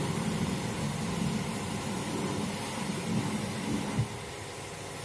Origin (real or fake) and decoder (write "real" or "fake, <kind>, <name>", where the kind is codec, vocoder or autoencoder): real